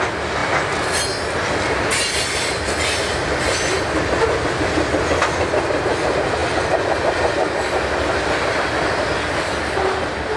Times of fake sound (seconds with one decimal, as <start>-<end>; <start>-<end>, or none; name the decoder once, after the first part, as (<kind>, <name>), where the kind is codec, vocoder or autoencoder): none